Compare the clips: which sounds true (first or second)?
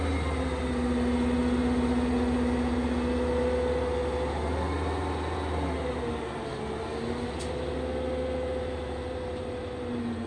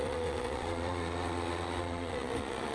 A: first